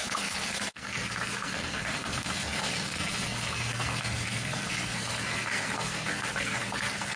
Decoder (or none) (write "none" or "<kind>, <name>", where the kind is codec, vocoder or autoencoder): codec, SNAC